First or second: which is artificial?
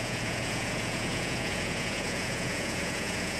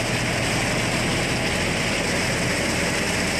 first